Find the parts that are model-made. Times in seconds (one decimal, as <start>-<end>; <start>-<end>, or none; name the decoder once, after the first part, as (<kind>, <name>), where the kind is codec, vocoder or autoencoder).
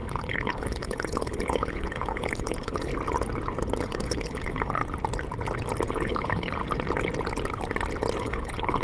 0.0-2.9 (codec, HILCodec); 3.8-4.8; 5.9-6.6; 8.2-8.8